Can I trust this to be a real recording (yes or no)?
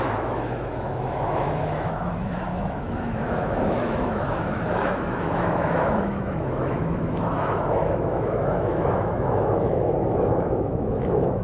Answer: no